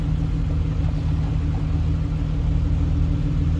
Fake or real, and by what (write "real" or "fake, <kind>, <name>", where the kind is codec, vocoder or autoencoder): real